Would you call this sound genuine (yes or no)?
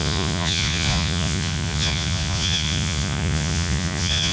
no